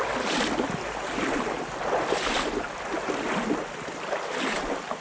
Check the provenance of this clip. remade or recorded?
recorded